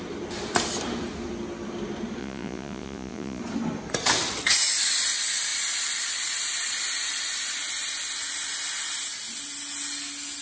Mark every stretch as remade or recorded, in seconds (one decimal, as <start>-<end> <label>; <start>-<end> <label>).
0.0-2.2 recorded; 2.2-3.4 remade; 3.4-10.4 recorded